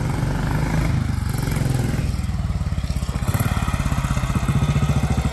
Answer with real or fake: real